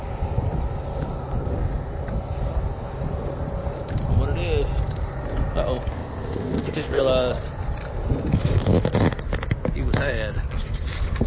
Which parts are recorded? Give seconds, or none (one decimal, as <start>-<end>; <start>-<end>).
0.0-5.9; 7.0-11.3